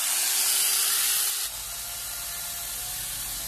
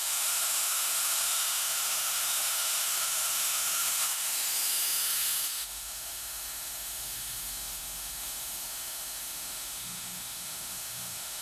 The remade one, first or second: second